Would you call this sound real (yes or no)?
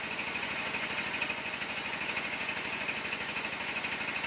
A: no